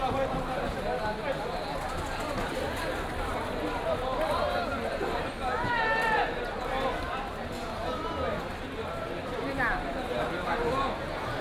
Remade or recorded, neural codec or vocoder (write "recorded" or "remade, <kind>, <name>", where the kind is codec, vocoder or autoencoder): recorded